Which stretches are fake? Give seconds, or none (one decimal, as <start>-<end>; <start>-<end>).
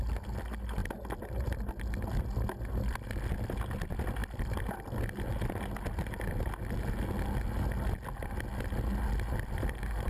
none